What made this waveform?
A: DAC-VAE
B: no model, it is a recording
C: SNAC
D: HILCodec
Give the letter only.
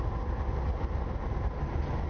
B